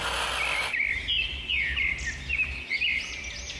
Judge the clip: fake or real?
real